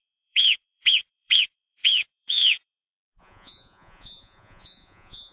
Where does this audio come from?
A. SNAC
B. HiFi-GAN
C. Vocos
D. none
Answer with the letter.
C